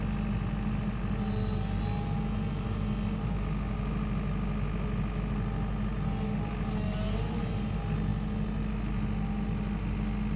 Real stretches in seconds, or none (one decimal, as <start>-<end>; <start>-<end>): 0.0-10.4